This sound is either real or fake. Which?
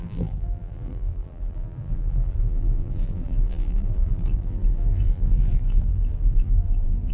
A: fake